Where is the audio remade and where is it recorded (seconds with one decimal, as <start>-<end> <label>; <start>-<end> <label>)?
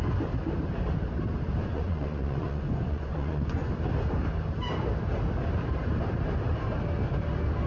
0.0-1.6 recorded; 1.6-3.7 remade; 3.7-7.7 recorded